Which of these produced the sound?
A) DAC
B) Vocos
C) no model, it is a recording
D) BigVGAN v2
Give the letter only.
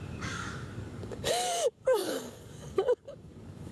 A